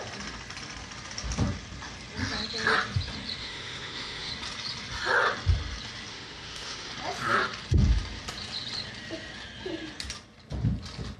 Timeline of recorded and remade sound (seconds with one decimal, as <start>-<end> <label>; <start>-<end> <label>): 0.0-3.4 recorded; 3.4-4.3 remade; 4.3-6.1 recorded; 6.1-6.9 remade; 6.9-11.2 recorded